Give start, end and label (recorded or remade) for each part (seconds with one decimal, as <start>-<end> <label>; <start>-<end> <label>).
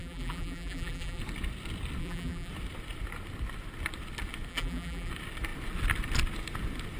0.0-1.2 remade; 1.2-2.0 recorded; 2.0-2.5 remade; 2.5-4.5 recorded; 4.5-5.1 remade; 5.1-7.0 recorded